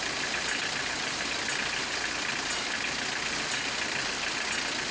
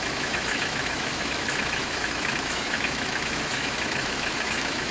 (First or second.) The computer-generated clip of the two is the second